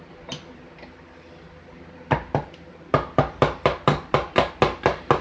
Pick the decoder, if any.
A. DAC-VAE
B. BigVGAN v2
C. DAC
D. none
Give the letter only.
B